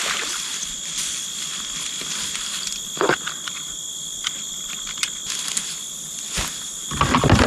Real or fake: real